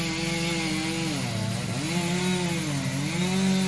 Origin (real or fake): real